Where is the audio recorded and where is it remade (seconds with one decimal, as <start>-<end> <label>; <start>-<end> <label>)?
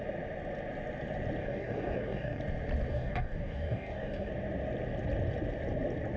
0.0-1.4 recorded; 1.4-2.4 remade; 2.4-2.9 recorded; 2.9-4.3 remade; 4.3-6.2 recorded